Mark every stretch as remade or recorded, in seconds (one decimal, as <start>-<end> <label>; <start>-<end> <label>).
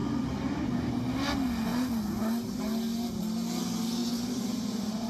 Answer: 0.0-1.0 remade; 1.0-4.0 recorded; 4.0-5.1 remade